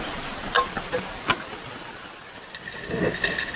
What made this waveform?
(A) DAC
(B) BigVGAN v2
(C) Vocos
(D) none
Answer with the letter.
D